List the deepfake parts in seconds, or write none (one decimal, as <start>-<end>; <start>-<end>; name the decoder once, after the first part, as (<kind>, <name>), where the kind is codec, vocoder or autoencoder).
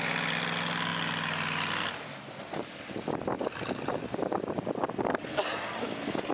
none